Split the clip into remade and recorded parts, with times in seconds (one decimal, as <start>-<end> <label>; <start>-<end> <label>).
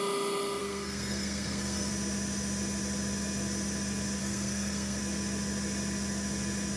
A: 0.0-0.6 recorded; 0.6-1.9 remade; 1.9-4.2 recorded; 4.2-5.0 remade; 5.0-6.8 recorded